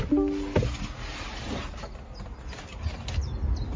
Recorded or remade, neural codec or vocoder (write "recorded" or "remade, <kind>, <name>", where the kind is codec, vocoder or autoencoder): recorded